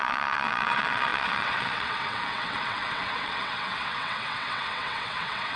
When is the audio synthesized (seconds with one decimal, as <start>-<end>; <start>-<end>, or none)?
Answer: 0.0-5.6

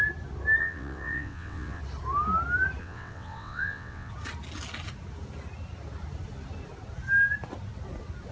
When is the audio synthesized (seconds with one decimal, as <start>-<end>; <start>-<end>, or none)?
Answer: 0.6-1.8; 2.8-4.1

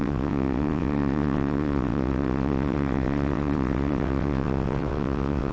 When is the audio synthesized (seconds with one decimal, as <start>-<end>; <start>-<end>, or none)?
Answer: 0.0-5.5

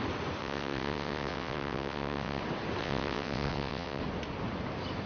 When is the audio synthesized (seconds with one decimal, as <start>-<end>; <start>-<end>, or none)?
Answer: 0.4-2.4; 2.8-4.0

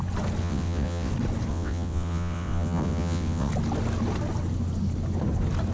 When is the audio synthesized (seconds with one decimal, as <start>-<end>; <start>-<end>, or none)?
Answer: 0.4-1.1; 1.5-3.5

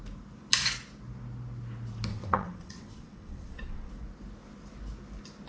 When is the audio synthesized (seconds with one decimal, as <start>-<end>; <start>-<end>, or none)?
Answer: 2.1-3.9

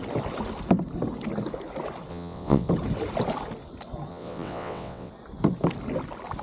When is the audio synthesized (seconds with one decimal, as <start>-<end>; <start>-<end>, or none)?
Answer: 2.1-2.7; 4.1-5.1

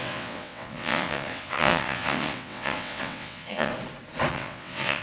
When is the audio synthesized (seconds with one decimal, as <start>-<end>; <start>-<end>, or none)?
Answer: 0.0-3.7; 4.3-5.0